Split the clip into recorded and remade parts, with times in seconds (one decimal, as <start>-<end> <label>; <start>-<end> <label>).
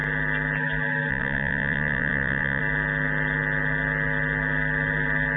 0.0-1.1 recorded; 1.1-2.6 remade; 2.6-5.4 recorded